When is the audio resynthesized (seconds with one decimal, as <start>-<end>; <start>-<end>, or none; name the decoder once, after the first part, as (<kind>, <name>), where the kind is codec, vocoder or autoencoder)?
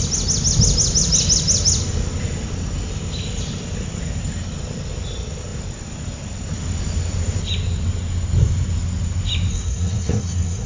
9.5-10.7 (codec, SNAC)